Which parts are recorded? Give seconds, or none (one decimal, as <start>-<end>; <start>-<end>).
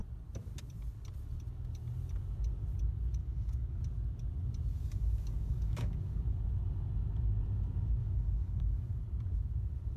0.0-3.2; 3.8-4.7; 6.4-8.0; 9.0-10.0